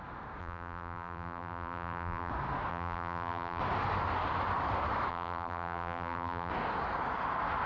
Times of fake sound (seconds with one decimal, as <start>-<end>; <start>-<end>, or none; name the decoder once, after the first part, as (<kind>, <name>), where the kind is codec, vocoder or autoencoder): 0.4-2.3 (vocoder, BigVGAN v2); 2.7-3.6; 5.1-6.5